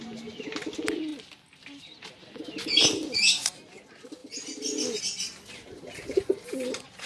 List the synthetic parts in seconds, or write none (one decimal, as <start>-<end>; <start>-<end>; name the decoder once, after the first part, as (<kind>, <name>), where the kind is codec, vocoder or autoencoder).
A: 3.0-3.5 (vocoder, BigVGAN v2)